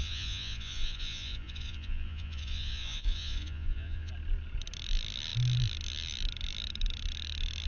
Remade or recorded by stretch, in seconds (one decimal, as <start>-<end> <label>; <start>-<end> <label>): 0.0-4.1 remade; 4.1-7.7 recorded